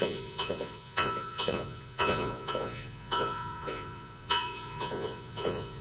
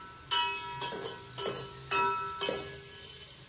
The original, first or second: second